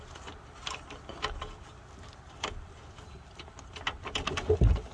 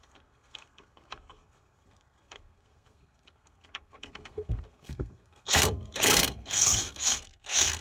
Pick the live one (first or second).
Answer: first